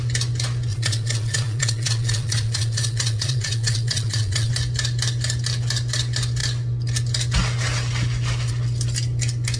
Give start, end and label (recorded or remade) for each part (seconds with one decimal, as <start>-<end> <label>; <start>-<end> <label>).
0.0-0.7 recorded; 0.7-4.5 remade; 4.5-9.6 recorded